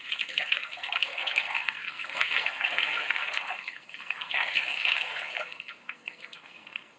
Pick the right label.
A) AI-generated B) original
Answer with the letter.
A